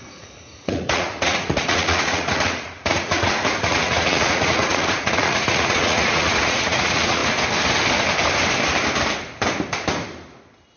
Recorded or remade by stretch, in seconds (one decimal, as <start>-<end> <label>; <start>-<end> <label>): 0.0-7.2 remade; 7.2-10.8 recorded